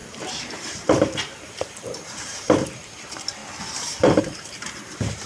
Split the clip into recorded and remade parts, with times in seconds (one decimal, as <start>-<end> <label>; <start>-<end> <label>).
0.0-3.4 remade; 3.4-4.2 recorded; 4.2-5.3 remade